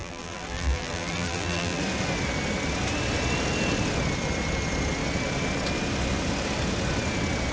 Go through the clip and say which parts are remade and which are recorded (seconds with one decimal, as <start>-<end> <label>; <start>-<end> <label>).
0.0-1.8 remade; 1.8-7.5 recorded